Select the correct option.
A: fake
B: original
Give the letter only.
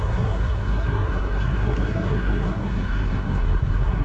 A